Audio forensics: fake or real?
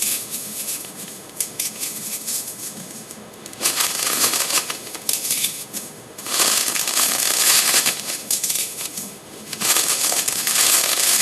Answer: fake